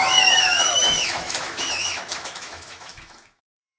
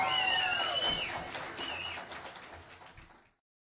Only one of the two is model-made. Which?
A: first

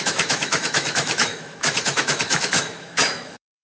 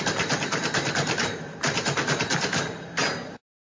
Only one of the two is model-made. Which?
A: first